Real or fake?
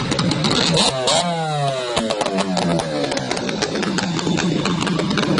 real